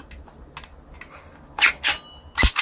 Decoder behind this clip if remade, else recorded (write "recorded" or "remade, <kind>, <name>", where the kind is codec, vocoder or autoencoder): recorded